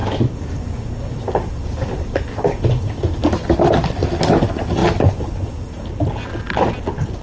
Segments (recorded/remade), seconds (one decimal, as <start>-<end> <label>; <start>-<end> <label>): 0.0-7.2 recorded